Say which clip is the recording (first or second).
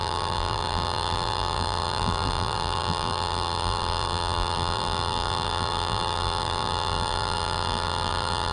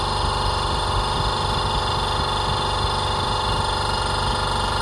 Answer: second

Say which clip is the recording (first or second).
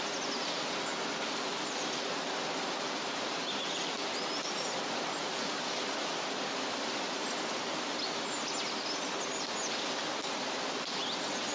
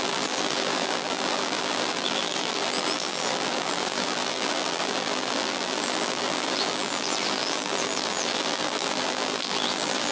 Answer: first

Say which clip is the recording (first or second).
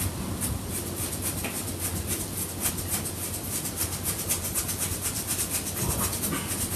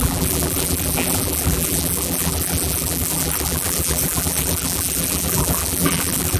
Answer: first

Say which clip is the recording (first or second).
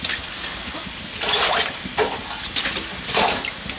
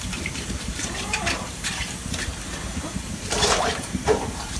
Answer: first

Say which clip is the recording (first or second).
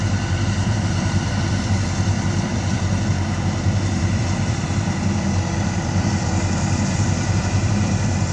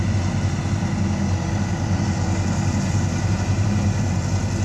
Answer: second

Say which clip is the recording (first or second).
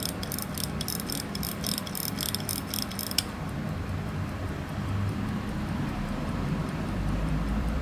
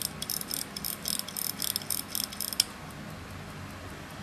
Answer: second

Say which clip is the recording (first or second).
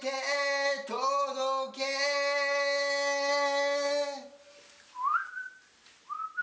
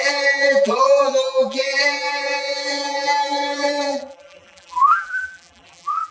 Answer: first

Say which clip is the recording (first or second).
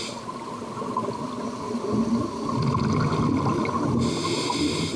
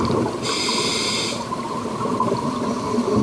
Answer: first